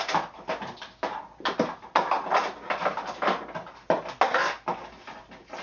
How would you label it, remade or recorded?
recorded